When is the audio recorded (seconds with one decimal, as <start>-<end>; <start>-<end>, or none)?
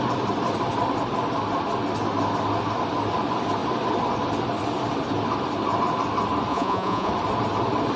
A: 0.0-6.5; 7.1-8.0